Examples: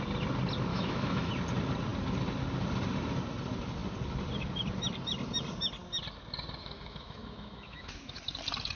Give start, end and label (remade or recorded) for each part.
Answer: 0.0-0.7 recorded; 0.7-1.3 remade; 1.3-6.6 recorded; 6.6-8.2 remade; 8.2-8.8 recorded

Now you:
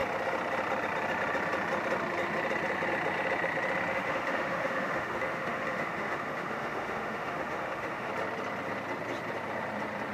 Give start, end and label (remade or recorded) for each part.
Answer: 0.0-3.9 recorded; 3.9-8.1 remade; 8.1-10.1 recorded